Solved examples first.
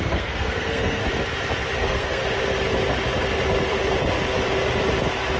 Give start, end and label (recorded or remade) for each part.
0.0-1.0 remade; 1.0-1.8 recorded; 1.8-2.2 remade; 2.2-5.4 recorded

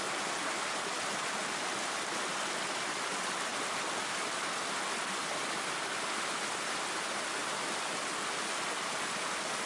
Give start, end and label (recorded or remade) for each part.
0.0-9.7 recorded

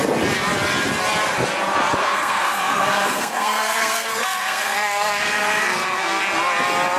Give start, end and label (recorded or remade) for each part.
0.0-2.0 recorded; 2.0-6.2 remade; 6.2-7.0 recorded

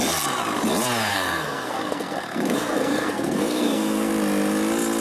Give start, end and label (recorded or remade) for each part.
0.0-1.1 recorded; 1.1-4.1 remade; 4.1-5.0 recorded